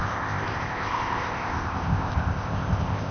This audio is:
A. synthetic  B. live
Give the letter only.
A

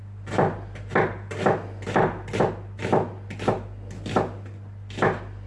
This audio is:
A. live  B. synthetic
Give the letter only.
A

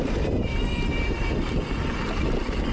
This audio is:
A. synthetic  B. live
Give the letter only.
B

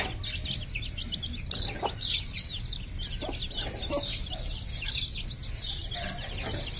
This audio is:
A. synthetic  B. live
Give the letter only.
B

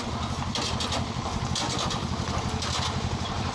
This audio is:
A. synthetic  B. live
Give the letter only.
B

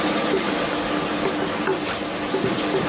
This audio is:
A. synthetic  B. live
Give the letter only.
B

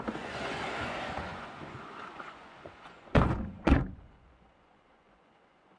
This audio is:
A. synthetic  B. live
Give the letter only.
A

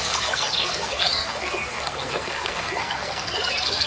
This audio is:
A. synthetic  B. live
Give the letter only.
A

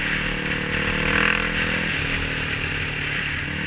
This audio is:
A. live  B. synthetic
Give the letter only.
A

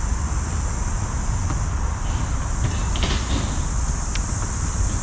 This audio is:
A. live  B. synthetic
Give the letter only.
A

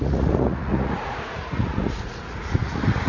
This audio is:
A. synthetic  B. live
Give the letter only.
A